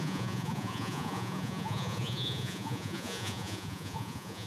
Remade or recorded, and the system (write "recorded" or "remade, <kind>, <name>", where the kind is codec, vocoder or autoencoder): remade, vocoder, Vocos